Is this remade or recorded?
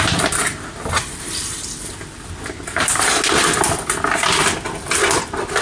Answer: recorded